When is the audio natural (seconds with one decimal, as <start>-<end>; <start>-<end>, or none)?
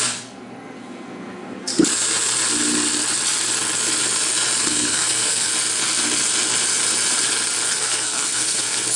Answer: 1.7-4.6; 5.5-7.7